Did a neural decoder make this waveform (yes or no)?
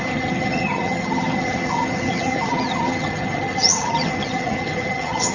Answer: yes